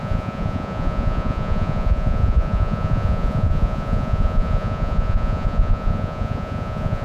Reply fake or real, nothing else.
fake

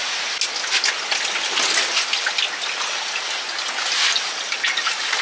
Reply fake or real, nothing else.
real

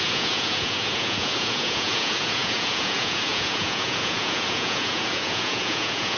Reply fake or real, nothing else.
fake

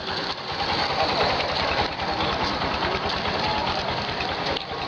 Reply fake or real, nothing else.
real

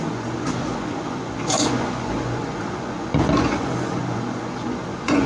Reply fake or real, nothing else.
fake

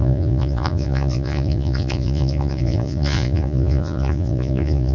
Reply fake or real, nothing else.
fake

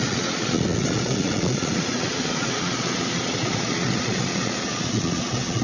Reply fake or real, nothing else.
fake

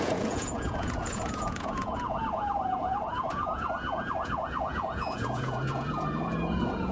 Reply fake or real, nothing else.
fake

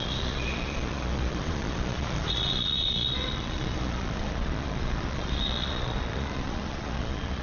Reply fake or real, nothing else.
fake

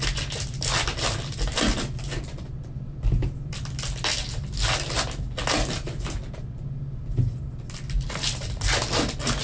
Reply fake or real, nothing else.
real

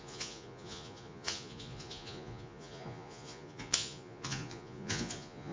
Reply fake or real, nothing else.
fake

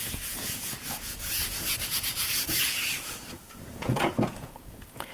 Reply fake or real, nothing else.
fake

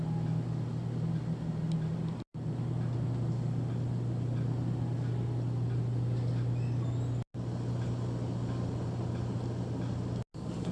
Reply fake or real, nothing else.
real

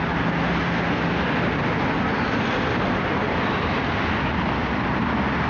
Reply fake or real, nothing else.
real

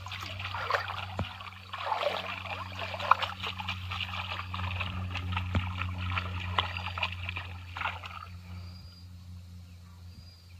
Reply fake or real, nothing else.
real